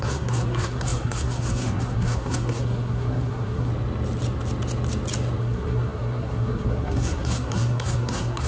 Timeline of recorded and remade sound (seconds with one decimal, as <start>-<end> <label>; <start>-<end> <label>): 0.0-3.7 remade; 3.7-5.4 recorded; 5.4-8.5 remade